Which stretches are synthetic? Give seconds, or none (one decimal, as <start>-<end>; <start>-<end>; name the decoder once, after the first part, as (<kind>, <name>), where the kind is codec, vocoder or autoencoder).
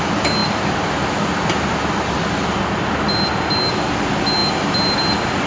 none